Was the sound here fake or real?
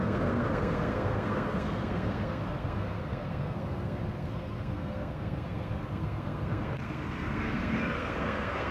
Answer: fake